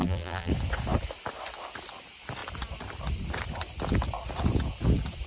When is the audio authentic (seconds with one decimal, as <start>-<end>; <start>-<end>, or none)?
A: 0.5-5.3